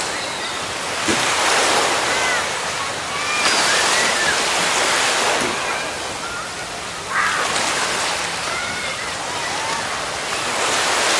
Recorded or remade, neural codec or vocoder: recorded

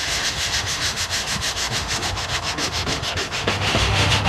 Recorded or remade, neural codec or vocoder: remade, autoencoder, DAC-VAE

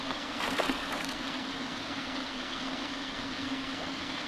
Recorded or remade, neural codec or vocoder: remade, codec, SNAC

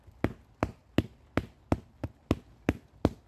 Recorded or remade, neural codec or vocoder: recorded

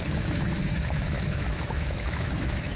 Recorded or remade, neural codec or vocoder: remade, autoencoder, DAC-VAE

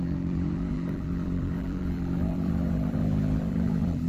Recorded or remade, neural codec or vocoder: remade, vocoder, BigVGAN v2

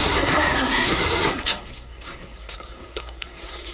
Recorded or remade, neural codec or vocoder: remade, codec, SNAC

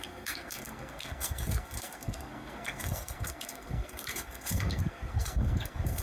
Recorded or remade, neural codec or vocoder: remade, codec, SNAC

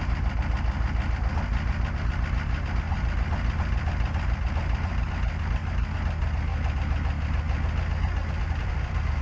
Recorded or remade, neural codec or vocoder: recorded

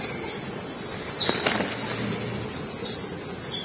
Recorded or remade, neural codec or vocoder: recorded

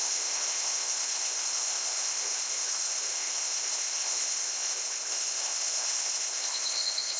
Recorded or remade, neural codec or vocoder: remade, codec, ZipCodec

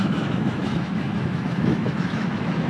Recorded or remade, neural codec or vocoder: remade, autoencoder, DAC-VAE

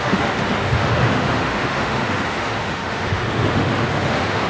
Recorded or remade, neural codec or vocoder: remade, autoencoder, DAC-VAE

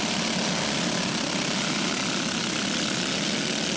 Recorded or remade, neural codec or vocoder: recorded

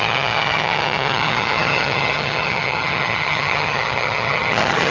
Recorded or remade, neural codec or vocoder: remade, vocoder, HiFi-GAN